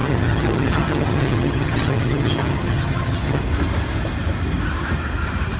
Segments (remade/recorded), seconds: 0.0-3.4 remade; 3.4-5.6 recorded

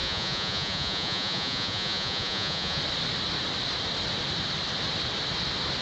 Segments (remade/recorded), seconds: 0.0-2.8 remade; 2.8-5.8 recorded

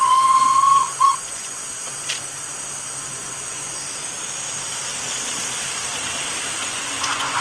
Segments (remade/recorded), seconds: 0.0-1.6 remade; 1.6-3.0 recorded; 3.0-3.8 remade; 3.8-6.6 recorded; 6.6-7.4 remade

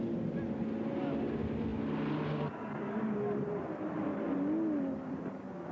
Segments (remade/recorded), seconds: 0.0-5.7 recorded

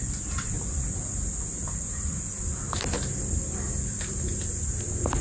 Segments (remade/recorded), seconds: 0.0-5.2 recorded